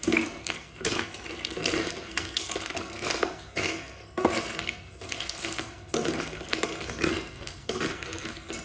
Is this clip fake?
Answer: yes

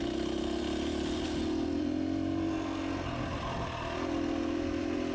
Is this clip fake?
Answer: no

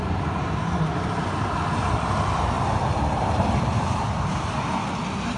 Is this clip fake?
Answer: yes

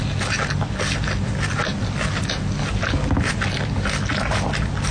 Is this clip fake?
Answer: no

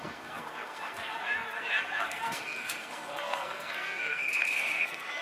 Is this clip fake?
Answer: yes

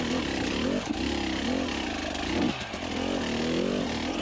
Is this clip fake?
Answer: no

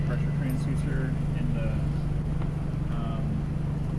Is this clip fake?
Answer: no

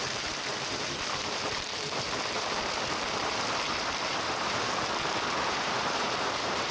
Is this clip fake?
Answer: yes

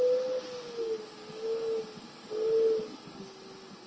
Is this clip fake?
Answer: no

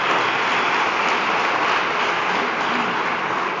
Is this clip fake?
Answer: no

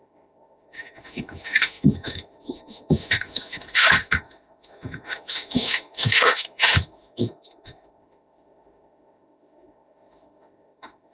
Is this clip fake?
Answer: yes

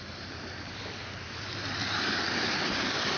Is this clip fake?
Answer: no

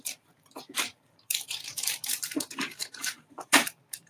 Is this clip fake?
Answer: yes